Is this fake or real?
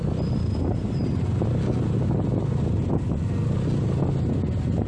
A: real